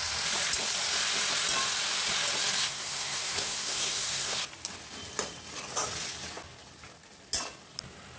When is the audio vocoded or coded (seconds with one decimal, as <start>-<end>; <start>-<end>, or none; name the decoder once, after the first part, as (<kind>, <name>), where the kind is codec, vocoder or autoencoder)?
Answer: 2.6-4.4 (codec, SNAC)

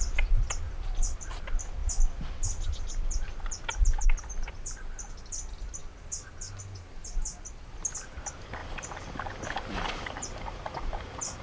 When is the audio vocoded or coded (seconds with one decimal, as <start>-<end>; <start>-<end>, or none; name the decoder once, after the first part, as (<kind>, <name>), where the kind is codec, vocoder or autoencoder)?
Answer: 8.6-11.4 (vocoder, BigVGAN v2)

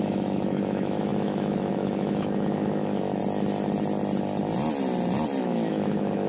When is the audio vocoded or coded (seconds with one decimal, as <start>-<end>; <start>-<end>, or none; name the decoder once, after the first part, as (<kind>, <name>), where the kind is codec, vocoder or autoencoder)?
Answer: 0.0-3.2 (autoencoder, DAC-VAE); 5.4-6.3

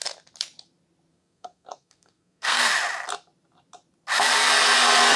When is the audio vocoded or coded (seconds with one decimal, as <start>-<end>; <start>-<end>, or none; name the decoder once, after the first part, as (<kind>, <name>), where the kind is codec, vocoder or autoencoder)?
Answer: 1.1-2.6 (codec, SNAC)

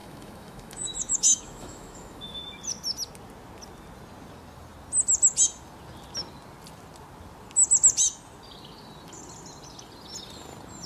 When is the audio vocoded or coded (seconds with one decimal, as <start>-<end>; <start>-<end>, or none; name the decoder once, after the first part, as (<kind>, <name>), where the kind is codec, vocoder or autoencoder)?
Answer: 0.0-2.4 (autoencoder, DAC-VAE)